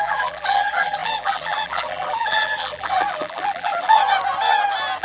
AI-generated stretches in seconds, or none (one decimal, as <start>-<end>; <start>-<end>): 0.0-4.0